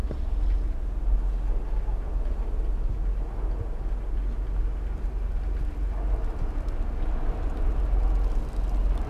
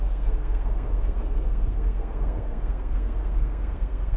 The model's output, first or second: second